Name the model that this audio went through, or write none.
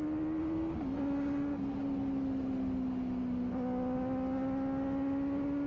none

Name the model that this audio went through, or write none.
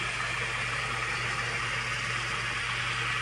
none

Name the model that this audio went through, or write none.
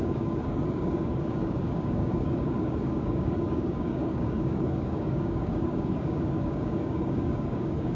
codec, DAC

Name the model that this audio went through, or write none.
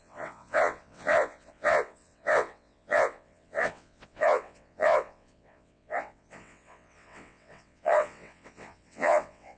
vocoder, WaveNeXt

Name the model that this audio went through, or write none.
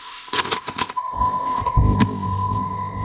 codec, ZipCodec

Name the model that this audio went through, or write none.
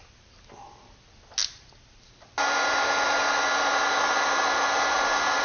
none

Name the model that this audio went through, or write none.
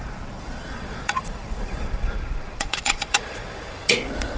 vocoder, Vocos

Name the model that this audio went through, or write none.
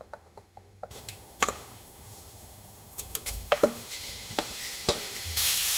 autoencoder, DAC-VAE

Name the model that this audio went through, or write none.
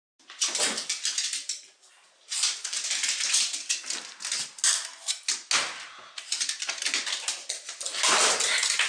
none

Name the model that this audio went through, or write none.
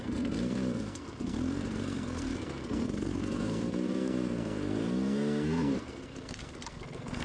codec, SNAC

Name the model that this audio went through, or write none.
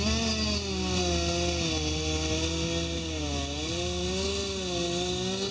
none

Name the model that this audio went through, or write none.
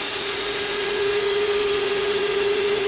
vocoder, Vocos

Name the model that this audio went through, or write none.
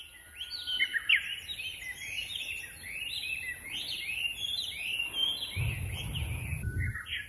none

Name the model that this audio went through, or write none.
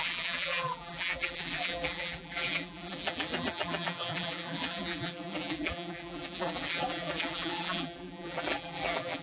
vocoder, BigVGAN v2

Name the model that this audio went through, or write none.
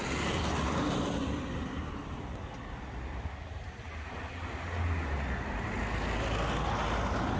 none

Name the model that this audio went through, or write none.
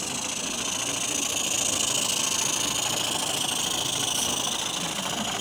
none